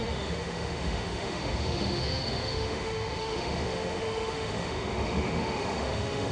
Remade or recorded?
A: remade